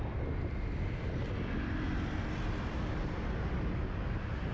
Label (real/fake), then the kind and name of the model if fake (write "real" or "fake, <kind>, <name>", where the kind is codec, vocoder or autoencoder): real